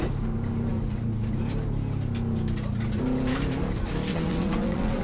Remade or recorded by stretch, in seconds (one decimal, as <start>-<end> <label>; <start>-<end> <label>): 0.0-4.1 recorded; 4.1-5.0 remade

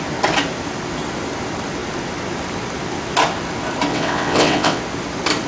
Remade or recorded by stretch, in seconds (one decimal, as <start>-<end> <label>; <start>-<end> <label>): 0.0-3.9 recorded; 3.9-4.8 remade; 4.8-5.5 recorded